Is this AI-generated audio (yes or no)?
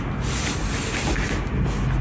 no